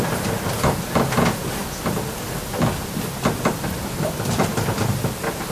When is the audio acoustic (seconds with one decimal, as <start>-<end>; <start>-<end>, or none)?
0.0-5.5